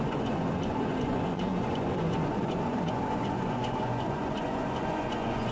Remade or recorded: remade